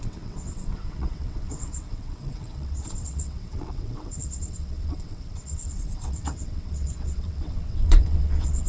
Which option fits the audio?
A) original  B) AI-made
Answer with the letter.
B